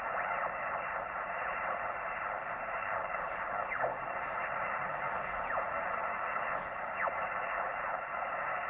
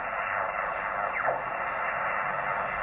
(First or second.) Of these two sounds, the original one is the second